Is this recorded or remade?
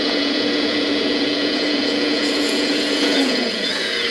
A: remade